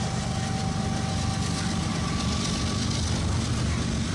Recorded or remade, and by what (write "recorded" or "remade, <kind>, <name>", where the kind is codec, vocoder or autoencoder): recorded